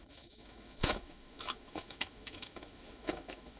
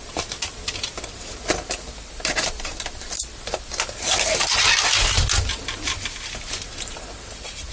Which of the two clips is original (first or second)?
second